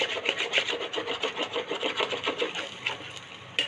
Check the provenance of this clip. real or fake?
fake